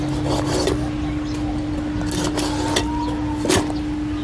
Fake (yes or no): no